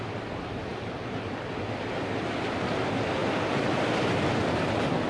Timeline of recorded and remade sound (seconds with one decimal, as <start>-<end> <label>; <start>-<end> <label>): 0.0-5.1 recorded